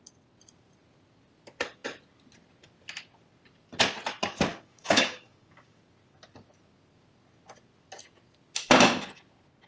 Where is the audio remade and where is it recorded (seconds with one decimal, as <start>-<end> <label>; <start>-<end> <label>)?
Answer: 0.0-4.5 recorded; 4.5-5.8 remade; 5.8-9.7 recorded